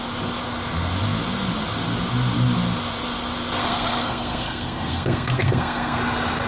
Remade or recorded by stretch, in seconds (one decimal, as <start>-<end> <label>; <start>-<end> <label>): 0.0-3.6 recorded; 3.6-6.0 remade; 6.0-6.5 recorded

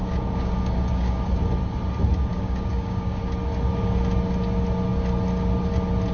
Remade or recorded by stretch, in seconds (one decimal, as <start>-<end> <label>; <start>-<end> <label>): 0.0-1.2 remade; 1.2-2.3 recorded; 2.3-3.2 remade; 3.2-6.1 recorded

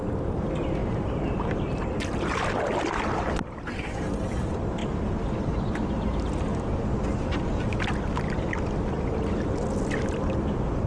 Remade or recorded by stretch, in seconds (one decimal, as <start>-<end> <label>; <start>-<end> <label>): 0.0-0.8 recorded; 0.8-1.9 remade; 1.9-10.9 recorded

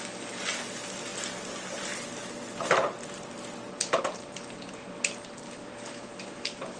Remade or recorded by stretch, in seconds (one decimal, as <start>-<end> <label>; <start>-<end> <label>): 0.0-5.6 recorded; 5.6-6.8 remade

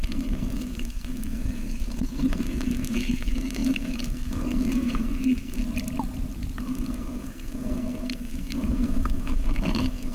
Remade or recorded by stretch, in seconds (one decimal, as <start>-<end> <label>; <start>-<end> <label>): 0.0-5.6 remade; 5.6-6.6 recorded; 6.6-10.1 remade

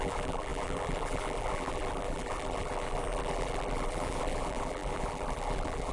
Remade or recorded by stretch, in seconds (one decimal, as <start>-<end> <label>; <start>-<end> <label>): 0.0-5.9 remade